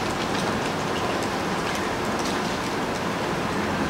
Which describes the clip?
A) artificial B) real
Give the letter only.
B